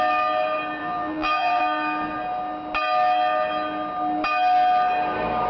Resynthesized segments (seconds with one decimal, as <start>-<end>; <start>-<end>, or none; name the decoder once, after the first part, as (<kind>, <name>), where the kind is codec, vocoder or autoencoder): 0.8-1.6 (vocoder, BigVGAN v2)